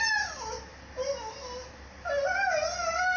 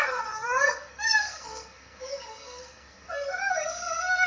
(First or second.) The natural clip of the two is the first